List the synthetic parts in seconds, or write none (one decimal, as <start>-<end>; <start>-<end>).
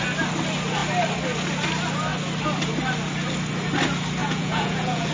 4.2-5.1